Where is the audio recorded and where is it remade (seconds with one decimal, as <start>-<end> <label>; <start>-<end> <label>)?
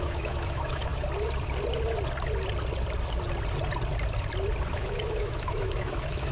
0.0-0.9 remade; 0.9-4.7 recorded; 4.7-6.3 remade